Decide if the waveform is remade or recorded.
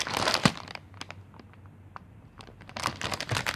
recorded